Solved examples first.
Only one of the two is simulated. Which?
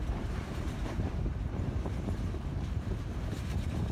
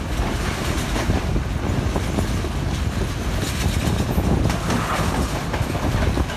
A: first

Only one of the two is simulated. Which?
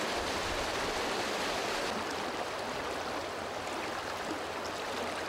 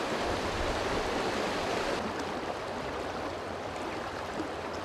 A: second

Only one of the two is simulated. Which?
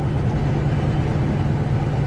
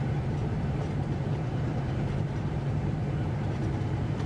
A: second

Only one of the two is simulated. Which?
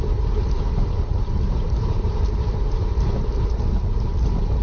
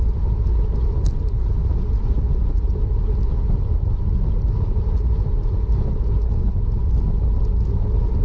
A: first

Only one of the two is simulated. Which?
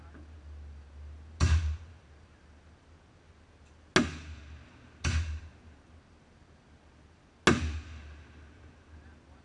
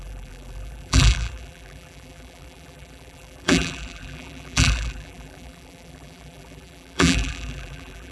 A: second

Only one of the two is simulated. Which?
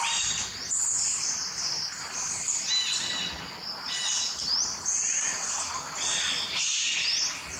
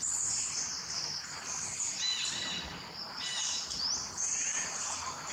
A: second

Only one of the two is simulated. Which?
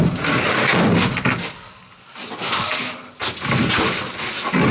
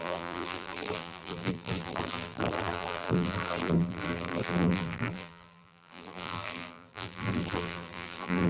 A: second